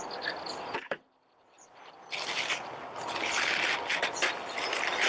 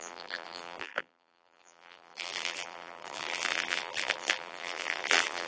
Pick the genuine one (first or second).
first